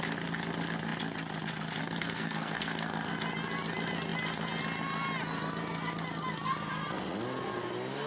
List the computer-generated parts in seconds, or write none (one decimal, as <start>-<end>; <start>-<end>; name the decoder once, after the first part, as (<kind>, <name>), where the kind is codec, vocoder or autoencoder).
1.8-3.1 (codec, SNAC)